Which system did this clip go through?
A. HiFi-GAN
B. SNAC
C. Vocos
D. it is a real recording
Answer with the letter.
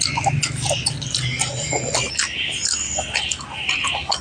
D